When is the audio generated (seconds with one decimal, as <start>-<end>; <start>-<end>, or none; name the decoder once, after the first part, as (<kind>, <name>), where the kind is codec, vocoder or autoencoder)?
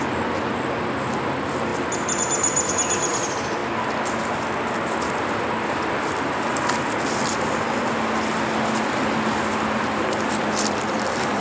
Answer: none